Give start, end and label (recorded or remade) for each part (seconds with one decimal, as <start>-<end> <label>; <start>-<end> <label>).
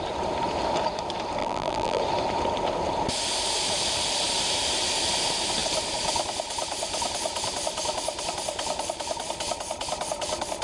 0.0-1.4 recorded; 1.4-2.0 remade; 2.0-10.6 recorded